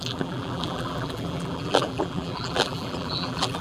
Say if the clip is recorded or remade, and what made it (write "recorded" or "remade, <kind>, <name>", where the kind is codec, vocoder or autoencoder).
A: remade, vocoder, BigVGAN v2